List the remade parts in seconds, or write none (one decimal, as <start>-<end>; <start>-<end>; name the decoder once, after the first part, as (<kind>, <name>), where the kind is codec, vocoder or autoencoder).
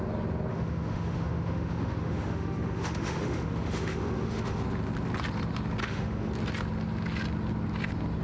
0.5-4.6 (autoencoder, DAC-VAE); 5.8-6.3